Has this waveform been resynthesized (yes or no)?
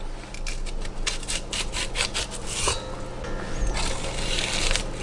no